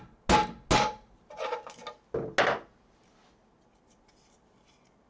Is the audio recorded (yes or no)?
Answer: yes